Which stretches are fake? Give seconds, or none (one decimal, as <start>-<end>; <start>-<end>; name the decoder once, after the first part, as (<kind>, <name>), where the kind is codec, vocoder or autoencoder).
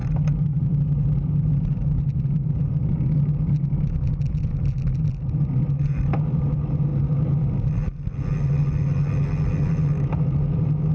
none